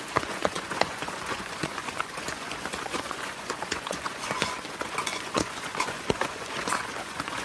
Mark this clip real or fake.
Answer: fake